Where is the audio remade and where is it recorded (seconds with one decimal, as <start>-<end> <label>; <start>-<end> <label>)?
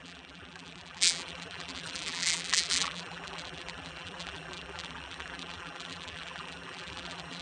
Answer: 0.0-7.4 remade